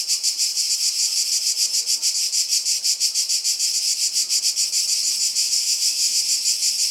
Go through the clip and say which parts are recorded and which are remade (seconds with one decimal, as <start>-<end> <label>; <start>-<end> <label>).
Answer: 0.0-5.4 recorded; 5.4-6.2 remade; 6.2-6.9 recorded